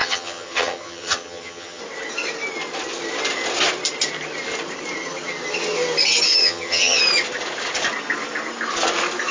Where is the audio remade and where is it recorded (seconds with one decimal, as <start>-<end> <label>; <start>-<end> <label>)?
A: 0.0-1.8 remade; 1.8-6.4 recorded; 6.4-7.0 remade; 7.0-9.3 recorded